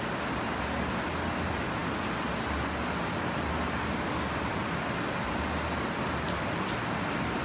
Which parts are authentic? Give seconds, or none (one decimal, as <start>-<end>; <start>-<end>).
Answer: 0.0-7.4